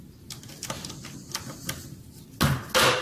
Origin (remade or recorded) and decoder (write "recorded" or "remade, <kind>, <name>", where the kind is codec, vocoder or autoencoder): recorded